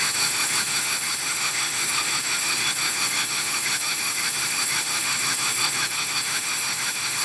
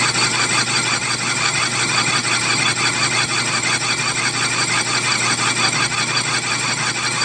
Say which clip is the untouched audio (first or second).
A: second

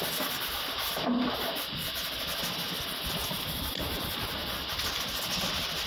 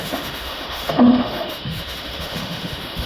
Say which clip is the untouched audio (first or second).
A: first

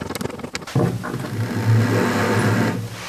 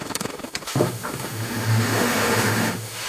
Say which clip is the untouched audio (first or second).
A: first